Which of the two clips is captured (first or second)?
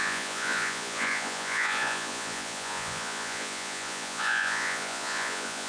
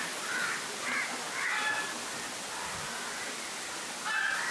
second